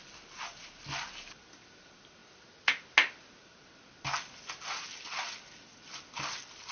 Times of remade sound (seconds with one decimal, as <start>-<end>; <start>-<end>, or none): none